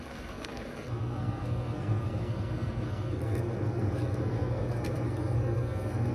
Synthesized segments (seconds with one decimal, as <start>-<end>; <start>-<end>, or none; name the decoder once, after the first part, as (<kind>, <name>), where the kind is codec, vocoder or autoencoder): 0.0-6.1 (codec, SNAC)